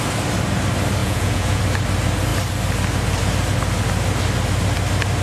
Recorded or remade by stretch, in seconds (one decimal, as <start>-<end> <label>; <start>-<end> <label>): 0.0-1.0 recorded; 1.0-1.6 remade; 1.6-5.2 recorded